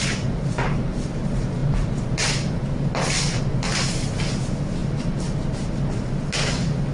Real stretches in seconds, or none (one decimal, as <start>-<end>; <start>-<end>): 0.0-6.9